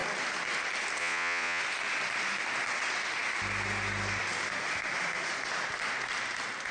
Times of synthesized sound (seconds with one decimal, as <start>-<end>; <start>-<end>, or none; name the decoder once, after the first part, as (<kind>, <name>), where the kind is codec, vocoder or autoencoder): 1.0-1.6 (vocoder, Vocos)